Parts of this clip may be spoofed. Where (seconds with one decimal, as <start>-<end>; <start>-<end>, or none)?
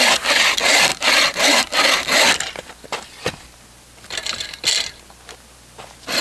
none